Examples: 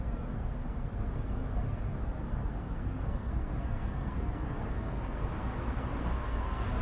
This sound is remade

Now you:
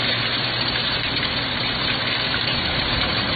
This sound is remade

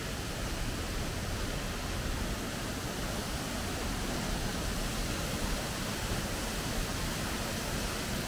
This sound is recorded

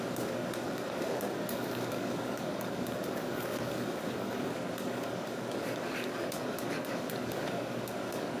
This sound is remade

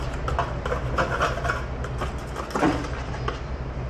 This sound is recorded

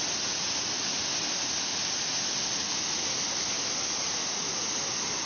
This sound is recorded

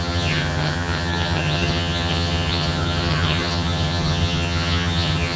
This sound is remade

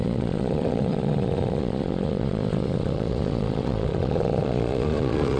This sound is remade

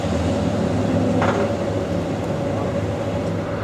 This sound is recorded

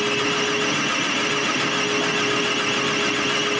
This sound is recorded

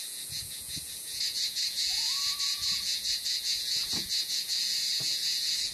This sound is remade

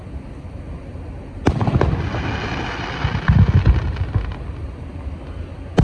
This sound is recorded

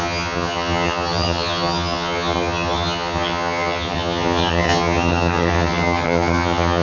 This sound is remade